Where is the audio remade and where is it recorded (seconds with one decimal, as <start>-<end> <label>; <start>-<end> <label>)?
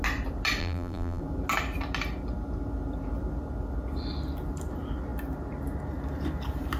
0.0-0.6 recorded; 0.6-1.2 remade; 1.2-6.8 recorded